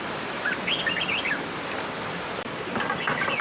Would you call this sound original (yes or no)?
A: no